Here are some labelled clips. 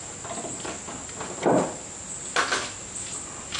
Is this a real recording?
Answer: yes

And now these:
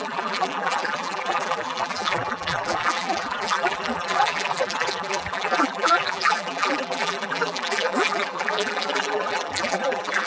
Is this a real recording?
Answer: no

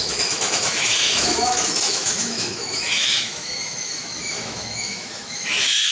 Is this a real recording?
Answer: no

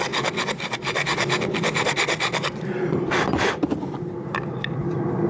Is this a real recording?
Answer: no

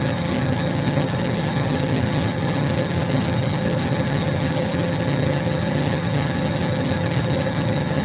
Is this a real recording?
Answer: no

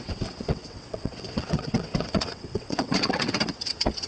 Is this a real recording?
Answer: no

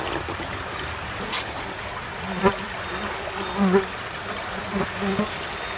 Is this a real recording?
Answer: yes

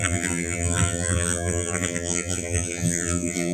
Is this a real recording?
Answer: no